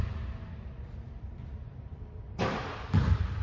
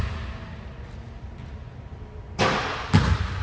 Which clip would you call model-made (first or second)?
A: first